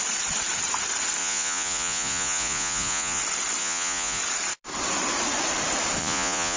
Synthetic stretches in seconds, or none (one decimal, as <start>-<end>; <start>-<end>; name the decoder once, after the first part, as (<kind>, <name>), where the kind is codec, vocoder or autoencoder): 1.2-3.2 (vocoder, Vocos); 3.6-4.2; 6.0-6.6